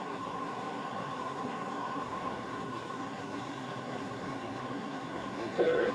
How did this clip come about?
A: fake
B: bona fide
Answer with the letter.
A